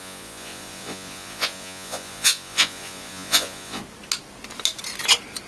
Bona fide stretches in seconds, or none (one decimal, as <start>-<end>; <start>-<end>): 3.8-5.5